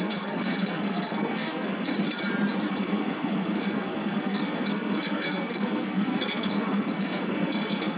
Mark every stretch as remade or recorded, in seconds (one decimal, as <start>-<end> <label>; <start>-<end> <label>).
0.0-1.9 remade; 1.9-2.7 recorded; 2.7-8.0 remade